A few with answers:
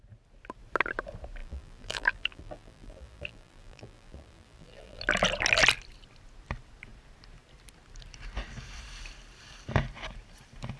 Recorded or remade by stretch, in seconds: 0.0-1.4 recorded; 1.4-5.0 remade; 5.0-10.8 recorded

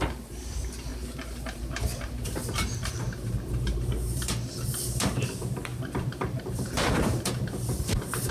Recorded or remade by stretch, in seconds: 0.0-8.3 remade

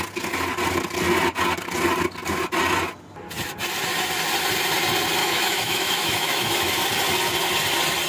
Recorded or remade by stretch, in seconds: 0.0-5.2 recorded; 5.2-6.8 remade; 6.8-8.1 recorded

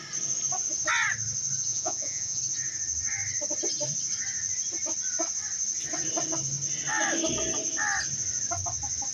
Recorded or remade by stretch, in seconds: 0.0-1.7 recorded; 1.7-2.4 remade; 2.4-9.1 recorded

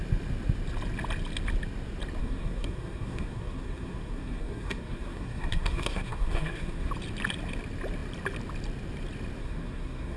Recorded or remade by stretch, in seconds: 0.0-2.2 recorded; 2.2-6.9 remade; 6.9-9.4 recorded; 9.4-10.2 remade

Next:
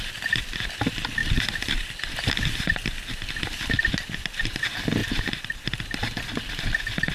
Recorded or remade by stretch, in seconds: 0.0-1.2 recorded; 1.2-2.3 remade; 2.3-7.1 recorded

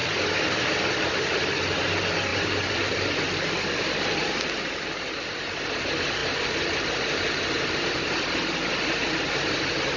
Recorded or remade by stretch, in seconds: 0.0-1.1 remade; 1.1-2.3 recorded; 2.3-4.4 remade; 4.4-6.2 recorded; 6.2-7.9 remade; 7.9-10.0 recorded